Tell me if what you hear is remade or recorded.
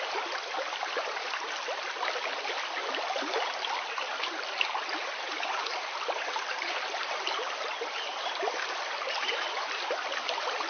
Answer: recorded